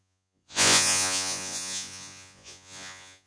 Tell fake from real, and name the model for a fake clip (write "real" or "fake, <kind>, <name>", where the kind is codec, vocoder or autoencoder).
fake, vocoder, Vocos